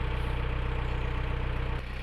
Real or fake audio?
real